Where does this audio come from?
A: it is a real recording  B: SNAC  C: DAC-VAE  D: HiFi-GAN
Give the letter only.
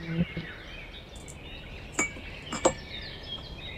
A